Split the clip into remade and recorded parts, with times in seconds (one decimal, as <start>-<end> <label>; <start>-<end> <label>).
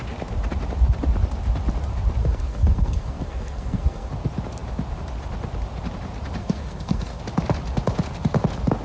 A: 0.0-2.2 recorded; 2.2-4.1 remade; 4.1-6.4 recorded; 6.4-7.2 remade; 7.2-8.8 recorded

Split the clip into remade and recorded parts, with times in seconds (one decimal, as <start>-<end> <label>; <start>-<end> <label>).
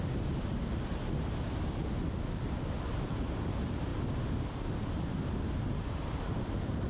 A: 0.0-6.9 recorded